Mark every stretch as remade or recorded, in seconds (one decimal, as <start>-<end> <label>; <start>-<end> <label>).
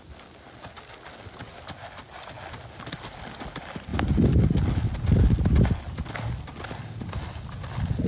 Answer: 0.0-8.1 recorded